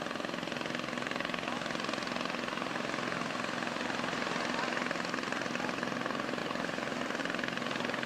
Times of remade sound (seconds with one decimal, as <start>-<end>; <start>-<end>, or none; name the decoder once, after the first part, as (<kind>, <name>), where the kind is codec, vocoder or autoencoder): none